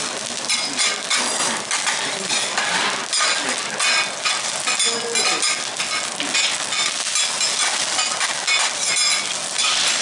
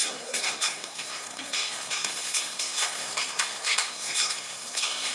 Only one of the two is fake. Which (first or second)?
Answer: second